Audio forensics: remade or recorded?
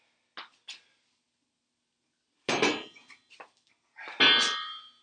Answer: recorded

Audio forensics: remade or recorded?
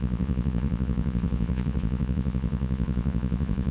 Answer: remade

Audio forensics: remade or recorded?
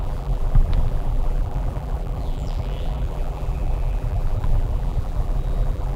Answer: remade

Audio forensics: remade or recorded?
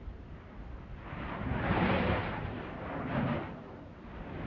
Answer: recorded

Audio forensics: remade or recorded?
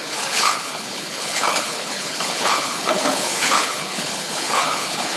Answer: remade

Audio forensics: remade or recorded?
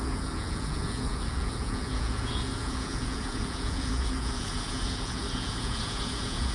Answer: remade